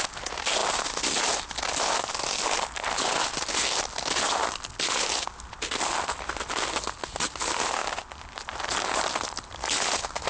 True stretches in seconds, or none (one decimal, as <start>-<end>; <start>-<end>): 0.0-10.3

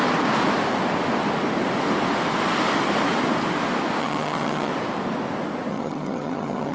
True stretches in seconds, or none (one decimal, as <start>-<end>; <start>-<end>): 0.0-4.0; 4.7-5.7

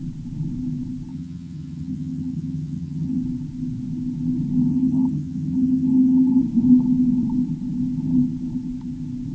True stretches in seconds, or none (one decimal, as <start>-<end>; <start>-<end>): 0.0-1.1; 3.2-4.7; 6.4-9.3

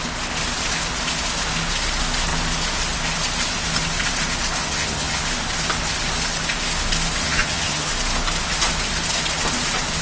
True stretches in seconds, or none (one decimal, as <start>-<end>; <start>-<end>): 0.0-4.6; 5.2-7.2; 7.9-10.0

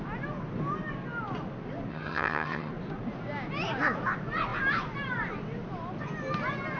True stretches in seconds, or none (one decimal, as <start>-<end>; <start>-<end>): 0.0-1.9; 2.7-6.8